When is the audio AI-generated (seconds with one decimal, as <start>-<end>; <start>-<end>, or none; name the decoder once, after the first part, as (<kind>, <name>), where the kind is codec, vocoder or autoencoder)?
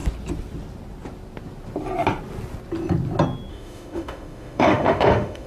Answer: 3.5-5.5 (autoencoder, DAC-VAE)